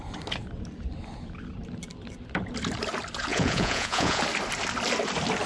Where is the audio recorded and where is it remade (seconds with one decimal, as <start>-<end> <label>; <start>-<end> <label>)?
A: 0.0-3.3 recorded; 3.3-4.2 remade; 4.2-5.5 recorded